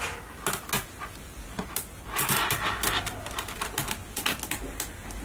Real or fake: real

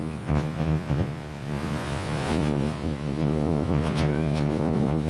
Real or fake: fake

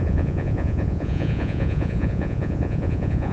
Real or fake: fake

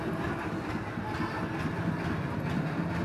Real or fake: real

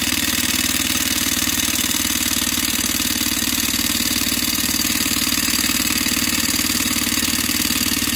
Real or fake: fake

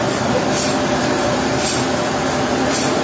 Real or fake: fake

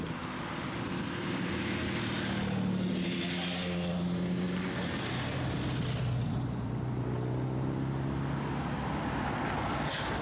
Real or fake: real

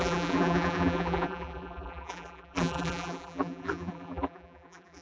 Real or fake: fake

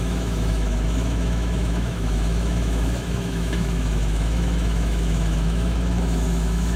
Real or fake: fake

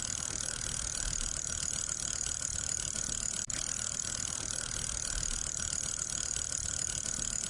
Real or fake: real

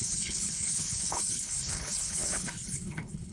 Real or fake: fake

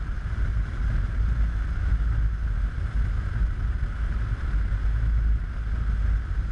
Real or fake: real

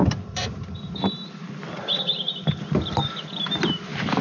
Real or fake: real